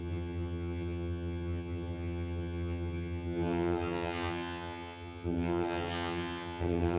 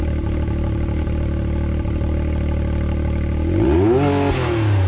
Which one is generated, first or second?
first